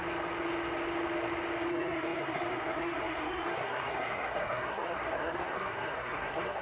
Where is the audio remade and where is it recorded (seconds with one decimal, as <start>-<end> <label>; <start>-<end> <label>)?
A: 0.0-1.7 recorded; 1.7-6.6 remade